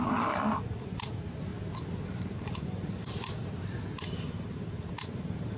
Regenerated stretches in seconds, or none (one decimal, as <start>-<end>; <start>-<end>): none